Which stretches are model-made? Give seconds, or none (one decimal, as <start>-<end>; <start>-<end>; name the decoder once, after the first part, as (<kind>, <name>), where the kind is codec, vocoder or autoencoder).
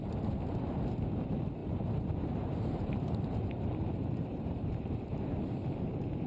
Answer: 1.6-5.4 (vocoder, BigVGAN v2)